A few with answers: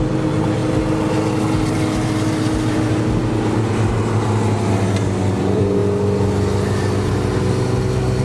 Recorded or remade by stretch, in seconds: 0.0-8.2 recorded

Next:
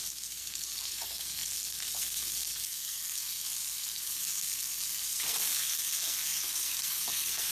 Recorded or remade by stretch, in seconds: 0.0-7.5 remade

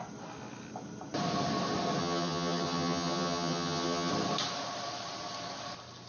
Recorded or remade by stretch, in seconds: 0.0-2.0 recorded; 2.0-4.1 remade; 4.1-6.1 recorded

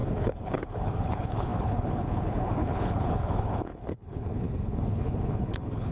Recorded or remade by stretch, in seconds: 0.0-5.9 remade

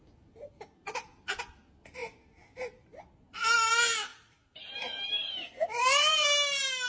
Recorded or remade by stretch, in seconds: 0.0-4.1 recorded; 4.1-5.8 remade; 5.8-6.9 recorded

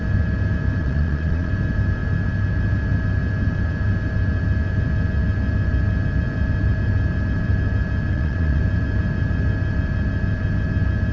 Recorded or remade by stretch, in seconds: 0.0-0.8 recorded; 0.8-1.5 remade; 1.5-8.1 recorded; 8.1-8.6 remade; 8.6-11.1 recorded

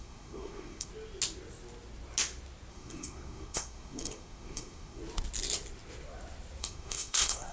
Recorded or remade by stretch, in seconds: 0.0-0.9 remade; 0.9-2.7 recorded; 2.7-5.0 remade; 5.0-6.6 recorded; 6.6-7.5 remade